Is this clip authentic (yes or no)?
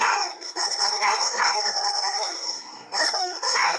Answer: no